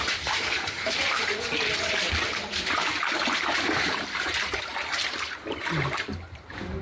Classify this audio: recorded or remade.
remade